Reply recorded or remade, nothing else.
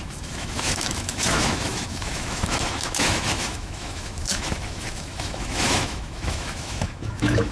remade